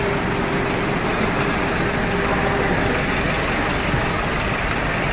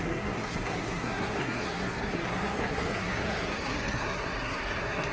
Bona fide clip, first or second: first